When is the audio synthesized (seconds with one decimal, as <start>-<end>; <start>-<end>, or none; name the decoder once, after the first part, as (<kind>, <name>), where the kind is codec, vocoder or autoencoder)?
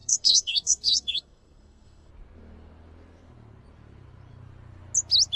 0.0-2.1 (codec, SNAC)